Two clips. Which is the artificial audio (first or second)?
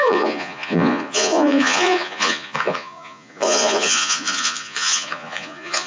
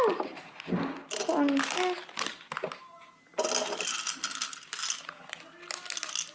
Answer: first